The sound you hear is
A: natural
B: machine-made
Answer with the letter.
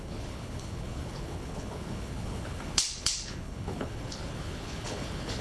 B